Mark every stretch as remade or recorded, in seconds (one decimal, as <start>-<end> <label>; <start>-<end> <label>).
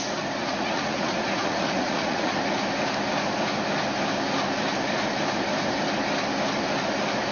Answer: 0.0-0.4 recorded; 0.4-2.4 remade; 2.4-7.3 recorded